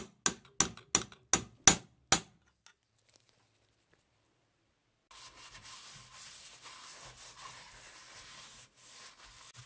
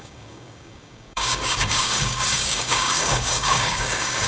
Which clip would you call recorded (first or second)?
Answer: first